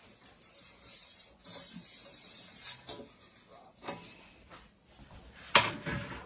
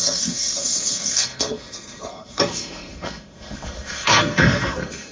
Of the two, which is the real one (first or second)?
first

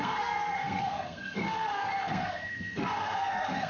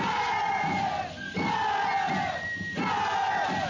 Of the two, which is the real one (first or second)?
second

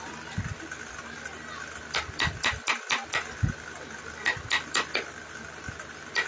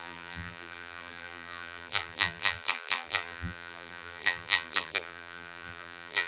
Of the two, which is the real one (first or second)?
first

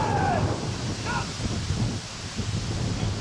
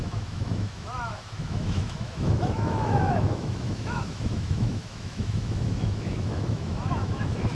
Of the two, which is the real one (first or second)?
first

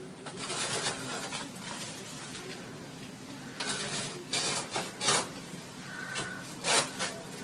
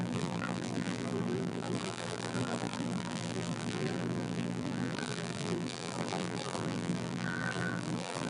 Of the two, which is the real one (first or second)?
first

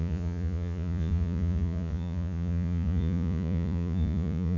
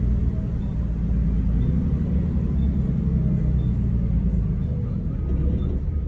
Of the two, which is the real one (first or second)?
second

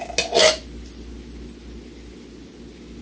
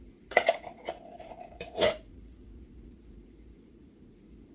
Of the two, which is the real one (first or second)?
first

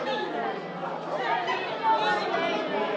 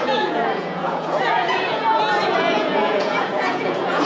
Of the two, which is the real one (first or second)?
first